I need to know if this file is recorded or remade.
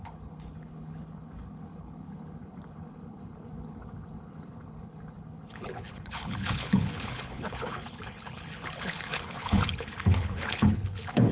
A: remade